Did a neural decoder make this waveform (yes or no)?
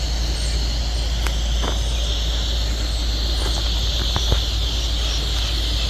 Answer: no